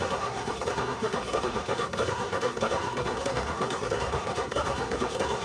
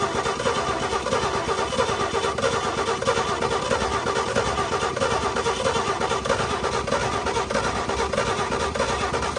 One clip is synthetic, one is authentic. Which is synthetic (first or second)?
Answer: first